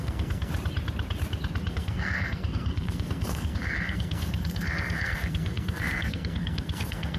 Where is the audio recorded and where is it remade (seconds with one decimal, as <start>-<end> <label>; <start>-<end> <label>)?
0.0-0.5 remade; 0.5-1.7 recorded; 1.7-7.2 remade